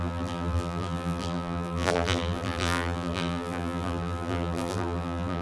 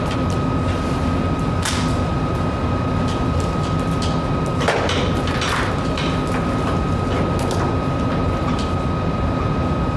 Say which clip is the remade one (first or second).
first